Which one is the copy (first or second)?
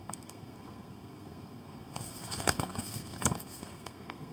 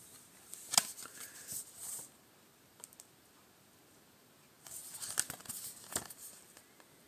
first